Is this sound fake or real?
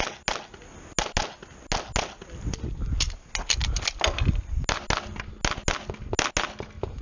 real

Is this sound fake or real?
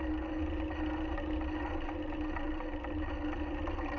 real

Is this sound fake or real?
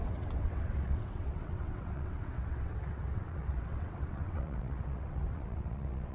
fake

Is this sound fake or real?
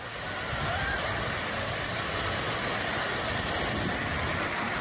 real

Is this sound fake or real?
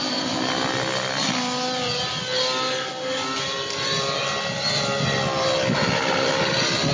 real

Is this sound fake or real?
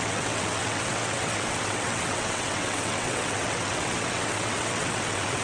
fake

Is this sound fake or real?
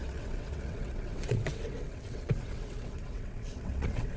fake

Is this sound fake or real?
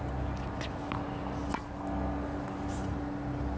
real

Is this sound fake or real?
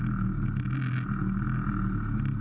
real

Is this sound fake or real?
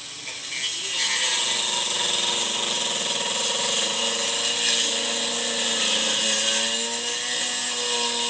real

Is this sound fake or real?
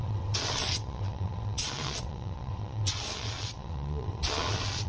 fake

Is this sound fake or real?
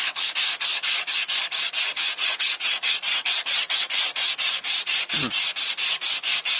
real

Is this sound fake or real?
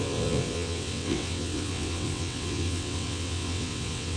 fake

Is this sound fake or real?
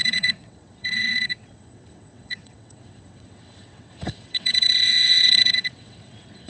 fake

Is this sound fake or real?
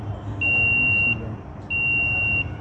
real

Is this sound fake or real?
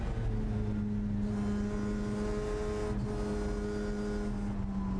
real